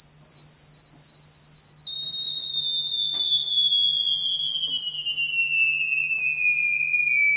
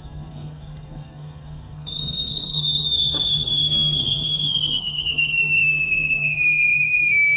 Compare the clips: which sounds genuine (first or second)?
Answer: first